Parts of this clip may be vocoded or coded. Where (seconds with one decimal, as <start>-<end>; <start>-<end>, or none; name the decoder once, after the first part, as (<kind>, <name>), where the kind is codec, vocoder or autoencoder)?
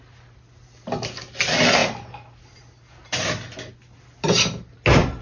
none